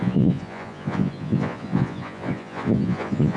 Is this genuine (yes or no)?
no